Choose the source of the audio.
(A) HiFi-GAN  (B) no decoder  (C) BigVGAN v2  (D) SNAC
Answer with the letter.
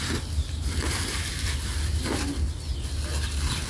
B